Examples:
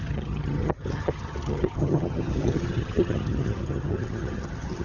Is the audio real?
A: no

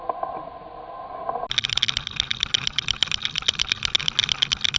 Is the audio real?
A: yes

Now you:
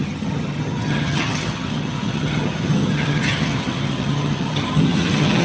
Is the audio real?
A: no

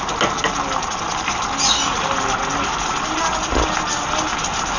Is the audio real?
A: yes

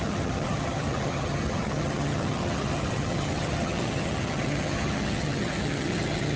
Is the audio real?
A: no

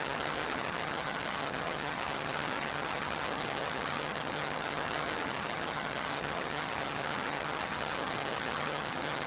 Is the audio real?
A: no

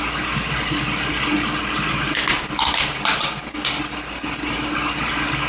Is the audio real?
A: yes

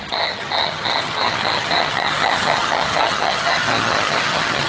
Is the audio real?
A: no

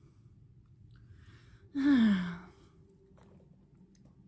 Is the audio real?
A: yes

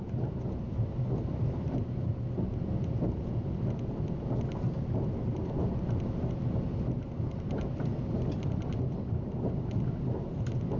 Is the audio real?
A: yes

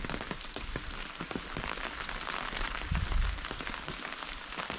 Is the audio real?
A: yes